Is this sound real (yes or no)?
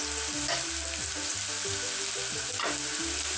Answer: yes